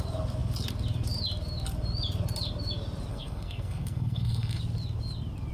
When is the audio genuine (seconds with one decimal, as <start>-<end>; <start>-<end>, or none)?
0.0-3.1; 4.6-5.5